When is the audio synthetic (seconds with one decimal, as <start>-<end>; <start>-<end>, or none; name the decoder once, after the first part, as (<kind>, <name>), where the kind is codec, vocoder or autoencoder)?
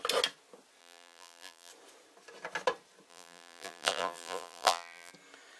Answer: 0.8-1.7 (vocoder, BigVGAN v2); 3.1-5.1